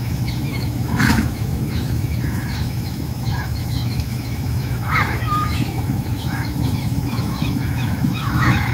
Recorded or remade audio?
remade